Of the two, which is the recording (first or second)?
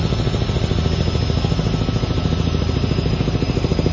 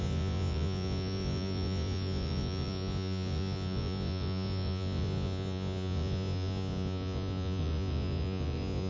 first